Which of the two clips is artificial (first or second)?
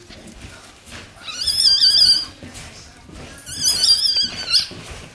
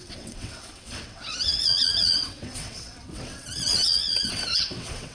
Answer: second